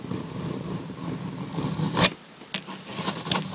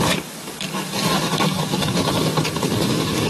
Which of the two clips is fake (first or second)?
second